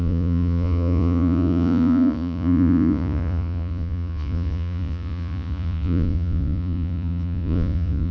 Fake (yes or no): yes